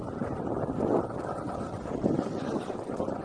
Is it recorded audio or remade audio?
recorded